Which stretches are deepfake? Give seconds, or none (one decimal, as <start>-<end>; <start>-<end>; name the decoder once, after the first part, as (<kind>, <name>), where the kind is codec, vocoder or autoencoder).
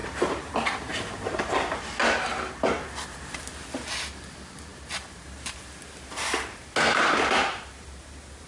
0.0-0.5 (vocoder, BigVGAN v2); 0.9-2.0